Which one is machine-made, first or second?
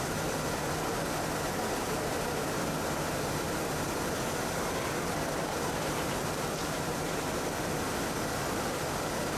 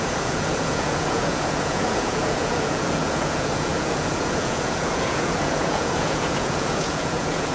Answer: second